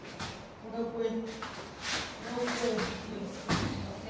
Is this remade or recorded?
recorded